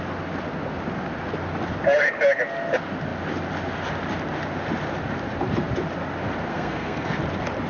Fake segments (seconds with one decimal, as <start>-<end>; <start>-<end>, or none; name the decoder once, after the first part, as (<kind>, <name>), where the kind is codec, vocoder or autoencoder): 6.5-7.2 (codec, SNAC)